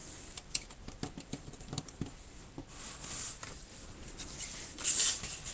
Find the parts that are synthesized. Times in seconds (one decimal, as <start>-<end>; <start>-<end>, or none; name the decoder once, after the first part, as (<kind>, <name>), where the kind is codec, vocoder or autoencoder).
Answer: 0.0-3.3 (vocoder, BigVGAN v2)